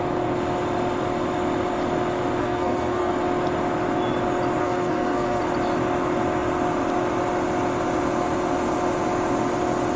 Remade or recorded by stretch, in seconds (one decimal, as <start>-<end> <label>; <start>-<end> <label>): 0.0-2.4 recorded; 2.4-3.1 remade; 3.1-4.6 recorded; 4.6-5.4 remade; 5.4-10.0 recorded